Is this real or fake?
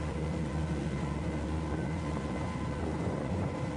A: fake